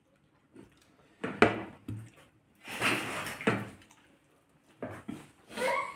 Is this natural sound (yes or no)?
yes